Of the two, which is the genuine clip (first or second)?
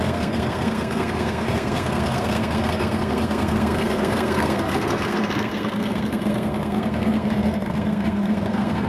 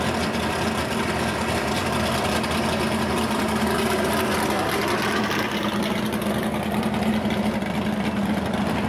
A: second